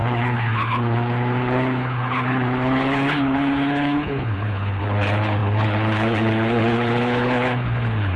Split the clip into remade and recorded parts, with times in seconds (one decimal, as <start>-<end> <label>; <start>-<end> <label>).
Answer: 0.0-8.2 remade

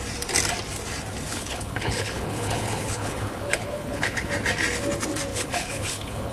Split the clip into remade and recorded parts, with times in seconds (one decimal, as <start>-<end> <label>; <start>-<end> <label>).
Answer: 0.0-1.3 recorded; 1.3-4.3 remade; 4.3-5.3 recorded; 5.3-6.3 remade

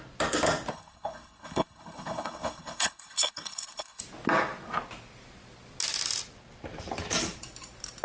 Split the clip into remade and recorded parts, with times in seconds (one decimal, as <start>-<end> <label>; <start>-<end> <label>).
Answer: 0.0-0.7 recorded; 0.7-4.0 remade; 4.0-8.0 recorded

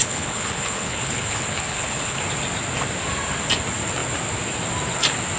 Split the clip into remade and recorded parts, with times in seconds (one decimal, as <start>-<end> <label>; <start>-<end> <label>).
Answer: 0.0-2.2 remade; 2.2-5.4 recorded

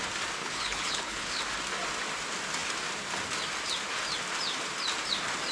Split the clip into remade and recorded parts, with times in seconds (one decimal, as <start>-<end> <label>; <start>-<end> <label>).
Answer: 0.0-0.4 recorded; 0.4-1.4 remade; 1.4-5.5 recorded

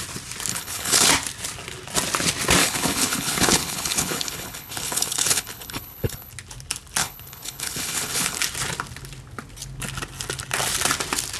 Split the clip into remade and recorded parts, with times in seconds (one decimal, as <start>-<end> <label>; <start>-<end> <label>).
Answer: 0.0-0.5 recorded; 0.5-1.1 remade; 1.1-2.6 recorded; 2.6-6.3 remade; 6.3-7.0 recorded; 7.0-8.4 remade; 8.4-11.4 recorded

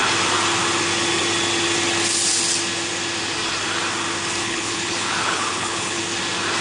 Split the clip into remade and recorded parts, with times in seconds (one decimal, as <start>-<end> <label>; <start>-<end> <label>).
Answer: 0.0-4.4 recorded; 4.4-6.0 remade; 6.0-6.6 recorded

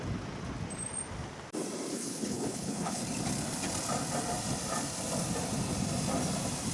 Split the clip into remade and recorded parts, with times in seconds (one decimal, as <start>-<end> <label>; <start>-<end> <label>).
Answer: 0.0-1.9 recorded; 1.9-3.0 remade; 3.0-6.7 recorded